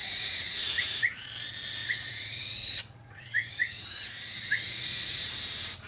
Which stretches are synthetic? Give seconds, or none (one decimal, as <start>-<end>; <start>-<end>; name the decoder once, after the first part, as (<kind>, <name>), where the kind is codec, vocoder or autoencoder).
0.0-1.3 (vocoder, Vocos); 1.8-5.3